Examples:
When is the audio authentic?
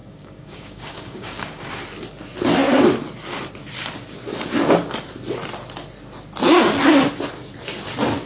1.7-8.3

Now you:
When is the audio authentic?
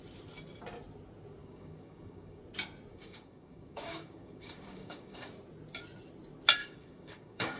0.0-1.4; 2.4-2.9; 5.3-6.6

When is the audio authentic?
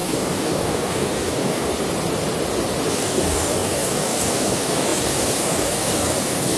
1.7-2.9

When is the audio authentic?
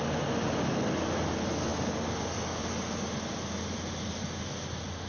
0.0-5.1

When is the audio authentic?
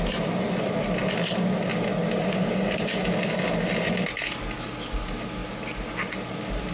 0.0-6.7